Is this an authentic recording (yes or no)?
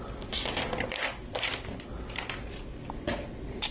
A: yes